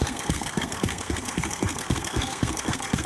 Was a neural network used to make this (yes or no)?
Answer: yes